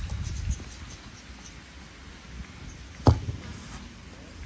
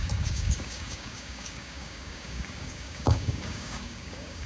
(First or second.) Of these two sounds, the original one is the first